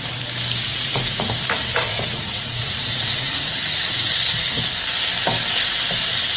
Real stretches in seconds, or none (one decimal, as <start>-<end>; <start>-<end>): 0.0-0.7; 1.3-1.9; 4.1-6.4